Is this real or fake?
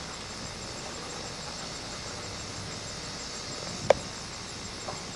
real